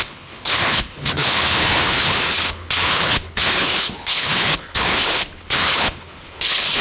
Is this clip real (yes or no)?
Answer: no